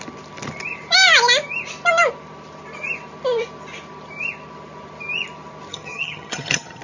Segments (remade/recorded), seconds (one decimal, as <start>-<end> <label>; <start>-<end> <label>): 0.0-5.7 recorded; 5.7-6.8 remade